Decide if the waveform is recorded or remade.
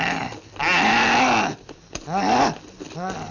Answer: recorded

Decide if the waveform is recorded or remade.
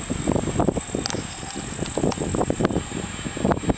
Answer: recorded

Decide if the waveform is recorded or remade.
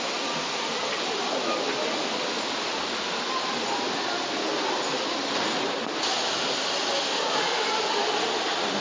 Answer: recorded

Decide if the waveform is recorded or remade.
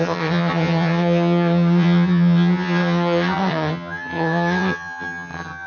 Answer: remade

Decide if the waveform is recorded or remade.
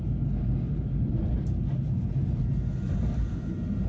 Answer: recorded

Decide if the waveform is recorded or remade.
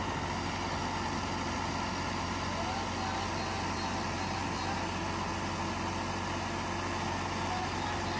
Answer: recorded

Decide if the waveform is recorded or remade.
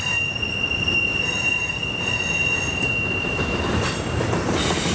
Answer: recorded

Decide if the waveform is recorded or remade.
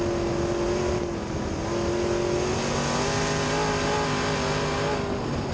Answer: recorded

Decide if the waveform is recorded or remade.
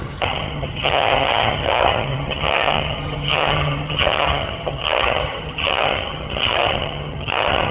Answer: remade